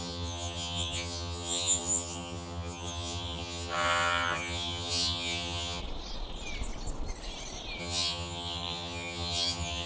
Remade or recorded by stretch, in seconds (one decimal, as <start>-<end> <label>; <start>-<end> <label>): 0.0-5.8 remade; 5.8-7.8 recorded; 7.8-9.9 remade